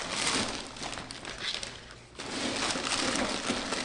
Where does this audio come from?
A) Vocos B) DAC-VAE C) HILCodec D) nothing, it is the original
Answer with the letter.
D